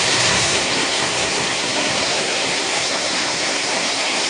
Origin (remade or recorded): remade